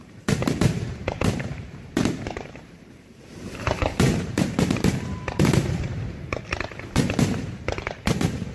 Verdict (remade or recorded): remade